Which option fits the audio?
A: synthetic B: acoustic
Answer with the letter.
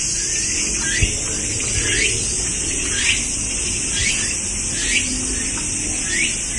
B